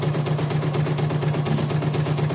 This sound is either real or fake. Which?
real